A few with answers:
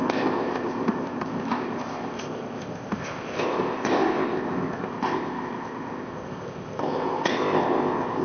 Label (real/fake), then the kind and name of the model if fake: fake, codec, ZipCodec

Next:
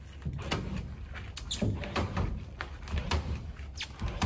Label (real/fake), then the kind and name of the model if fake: real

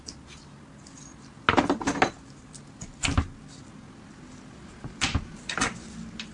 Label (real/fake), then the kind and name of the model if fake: real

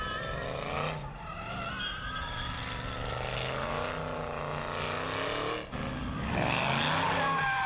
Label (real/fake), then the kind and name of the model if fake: real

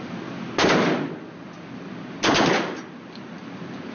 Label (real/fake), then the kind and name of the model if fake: real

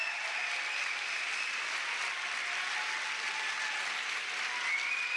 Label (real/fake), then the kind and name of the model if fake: real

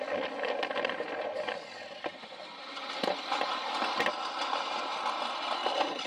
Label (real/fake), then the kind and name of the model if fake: real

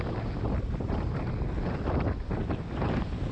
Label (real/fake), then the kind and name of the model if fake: real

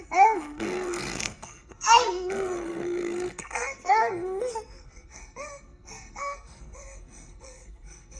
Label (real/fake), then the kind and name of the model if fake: fake, codec, SNAC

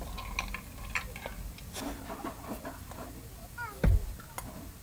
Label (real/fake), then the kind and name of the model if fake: real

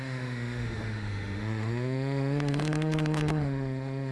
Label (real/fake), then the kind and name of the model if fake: fake, autoencoder, DAC-VAE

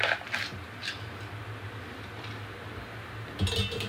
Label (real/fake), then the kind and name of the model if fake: real